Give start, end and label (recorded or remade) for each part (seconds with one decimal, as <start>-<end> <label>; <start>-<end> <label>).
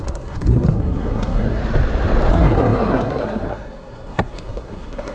0.0-1.6 remade; 1.6-2.3 recorded; 2.3-5.1 remade